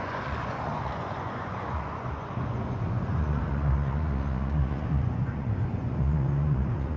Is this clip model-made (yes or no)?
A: yes